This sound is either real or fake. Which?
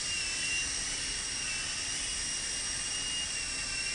real